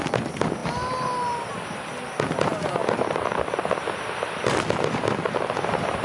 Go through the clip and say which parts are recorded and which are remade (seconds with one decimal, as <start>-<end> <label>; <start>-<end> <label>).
0.0-0.6 remade; 0.6-1.5 recorded; 1.5-2.8 remade; 2.8-4.1 recorded; 4.1-6.0 remade